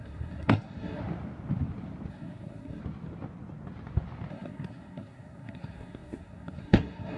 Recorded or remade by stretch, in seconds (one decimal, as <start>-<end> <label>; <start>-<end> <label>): 0.0-1.0 remade; 1.0-2.1 recorded; 2.1-2.8 remade; 2.8-4.3 recorded; 4.3-7.2 remade